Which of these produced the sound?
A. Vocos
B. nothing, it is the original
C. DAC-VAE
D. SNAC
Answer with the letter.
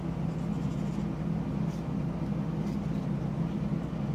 B